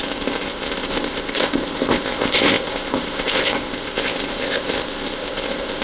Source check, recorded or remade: remade